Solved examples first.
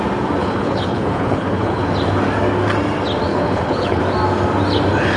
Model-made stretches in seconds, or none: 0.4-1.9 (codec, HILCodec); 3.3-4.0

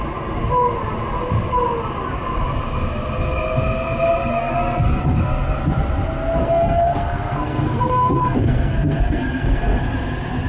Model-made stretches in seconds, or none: 4.3-5.0 (codec, SNAC); 6.4-9.8

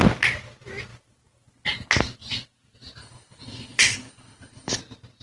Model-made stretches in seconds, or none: 3.0-4.8 (codec, HILCodec)

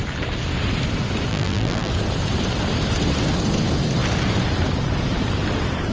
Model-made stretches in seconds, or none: 1.3-1.9 (vocoder, BigVGAN v2)

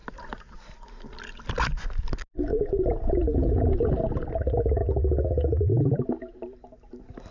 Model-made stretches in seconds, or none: 2.5-3.1 (vocoder, BigVGAN v2)